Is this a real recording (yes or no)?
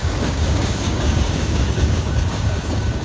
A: no